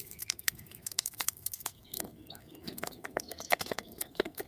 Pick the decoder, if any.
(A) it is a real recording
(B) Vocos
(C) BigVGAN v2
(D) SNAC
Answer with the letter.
D